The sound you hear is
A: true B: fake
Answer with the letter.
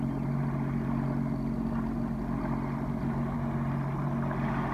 A